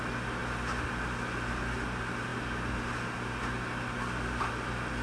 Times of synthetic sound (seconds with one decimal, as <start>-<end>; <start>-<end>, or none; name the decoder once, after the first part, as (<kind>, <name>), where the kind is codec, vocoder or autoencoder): none